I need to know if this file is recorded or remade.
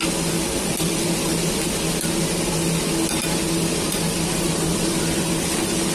recorded